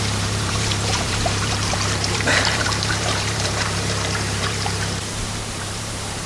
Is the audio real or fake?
fake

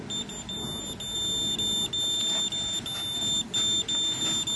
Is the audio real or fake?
real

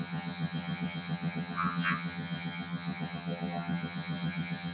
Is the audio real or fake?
fake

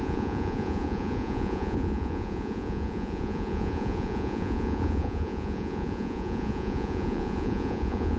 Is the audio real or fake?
fake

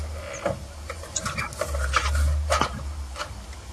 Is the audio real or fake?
real